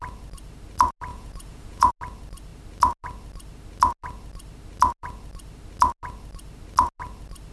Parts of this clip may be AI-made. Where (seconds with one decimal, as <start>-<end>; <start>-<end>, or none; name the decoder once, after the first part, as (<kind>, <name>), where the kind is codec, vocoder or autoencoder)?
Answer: 1.1-1.9 (vocoder, Vocos)